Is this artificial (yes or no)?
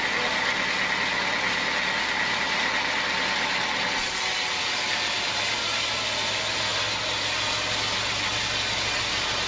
no